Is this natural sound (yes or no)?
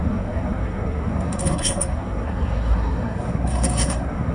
no